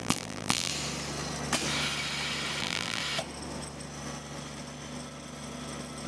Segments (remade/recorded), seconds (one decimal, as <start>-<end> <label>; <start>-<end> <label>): 0.0-0.7 remade; 0.7-2.6 recorded; 2.6-3.0 remade; 3.0-6.1 recorded